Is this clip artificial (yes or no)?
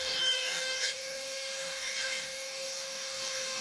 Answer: yes